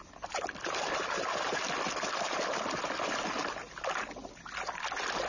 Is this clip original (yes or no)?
yes